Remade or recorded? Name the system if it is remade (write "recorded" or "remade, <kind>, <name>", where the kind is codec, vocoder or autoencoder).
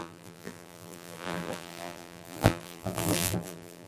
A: remade, vocoder, BigVGAN v2